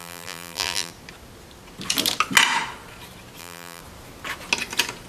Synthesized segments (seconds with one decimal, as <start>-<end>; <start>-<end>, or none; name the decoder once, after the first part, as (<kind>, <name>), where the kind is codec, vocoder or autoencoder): 0.0-0.9 (vocoder, BigVGAN v2); 3.4-3.8